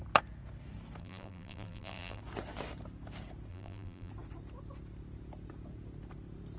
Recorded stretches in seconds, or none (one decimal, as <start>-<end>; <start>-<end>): 0.0-1.0; 2.2-3.5; 4.1-6.6